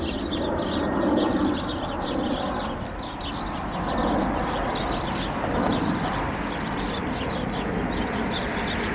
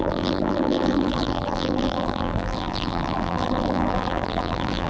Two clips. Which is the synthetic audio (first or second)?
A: second